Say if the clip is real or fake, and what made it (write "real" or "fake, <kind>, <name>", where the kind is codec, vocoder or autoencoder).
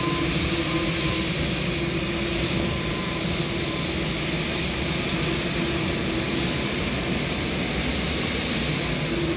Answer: real